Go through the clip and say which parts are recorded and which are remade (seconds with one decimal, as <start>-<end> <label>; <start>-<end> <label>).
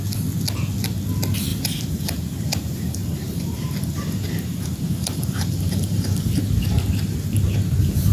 0.0-1.5 recorded; 1.5-6.4 remade; 6.4-8.1 recorded